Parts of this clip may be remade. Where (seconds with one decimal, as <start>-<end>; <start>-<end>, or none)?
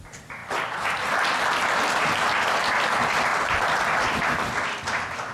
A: none